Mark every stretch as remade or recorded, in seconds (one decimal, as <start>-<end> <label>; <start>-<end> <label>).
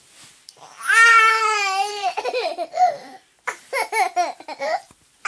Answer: 0.0-1.9 recorded; 1.9-2.8 remade; 2.8-5.3 recorded